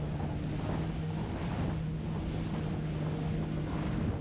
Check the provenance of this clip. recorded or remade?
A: recorded